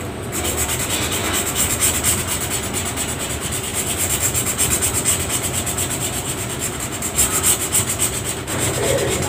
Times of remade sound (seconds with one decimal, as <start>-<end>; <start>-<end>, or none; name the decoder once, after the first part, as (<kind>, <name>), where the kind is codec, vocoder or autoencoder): 1.2-2.5 (vocoder, BigVGAN v2); 3.7-7.4